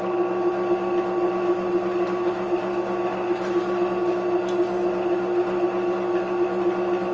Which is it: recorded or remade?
recorded